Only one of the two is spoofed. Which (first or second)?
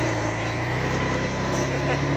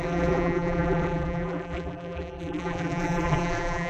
second